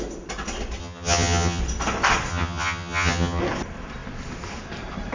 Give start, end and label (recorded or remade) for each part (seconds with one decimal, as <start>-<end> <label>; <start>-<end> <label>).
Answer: 0.0-0.8 recorded; 0.8-1.6 remade; 1.6-2.3 recorded; 2.3-3.4 remade; 3.4-5.1 recorded